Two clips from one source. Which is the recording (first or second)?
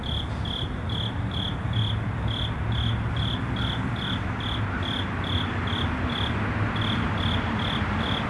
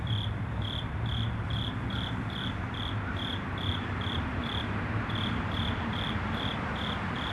first